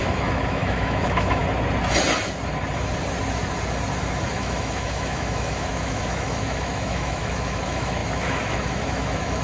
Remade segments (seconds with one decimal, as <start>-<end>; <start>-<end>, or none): 0.0-1.4; 4.3-9.4